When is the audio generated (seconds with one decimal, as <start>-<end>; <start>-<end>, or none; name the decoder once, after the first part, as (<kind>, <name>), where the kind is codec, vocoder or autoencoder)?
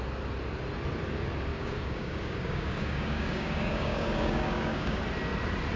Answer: 1.5-5.0 (codec, DAC)